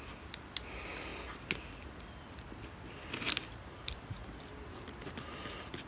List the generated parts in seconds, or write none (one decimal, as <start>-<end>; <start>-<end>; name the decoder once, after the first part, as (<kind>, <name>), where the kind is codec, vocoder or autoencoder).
none